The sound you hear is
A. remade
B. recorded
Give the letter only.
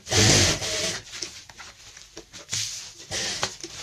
A